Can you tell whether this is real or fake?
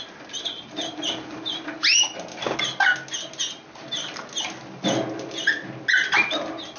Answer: real